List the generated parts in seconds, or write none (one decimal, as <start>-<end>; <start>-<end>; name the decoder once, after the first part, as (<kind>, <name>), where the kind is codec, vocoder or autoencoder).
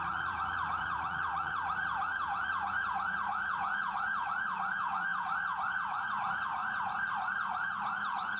0.0-8.4 (vocoder, Vocos)